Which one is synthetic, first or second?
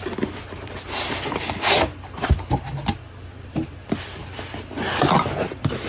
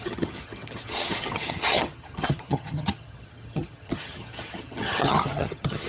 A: second